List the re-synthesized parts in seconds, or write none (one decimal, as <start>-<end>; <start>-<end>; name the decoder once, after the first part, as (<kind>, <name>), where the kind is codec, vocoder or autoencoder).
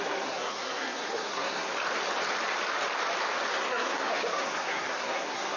0.0-1.7 (codec, SNAC); 3.5-5.6